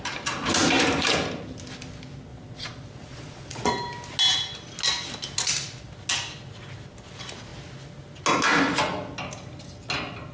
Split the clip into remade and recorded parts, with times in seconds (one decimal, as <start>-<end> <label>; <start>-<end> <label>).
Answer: 0.0-2.3 recorded; 2.3-3.7 remade; 3.7-10.3 recorded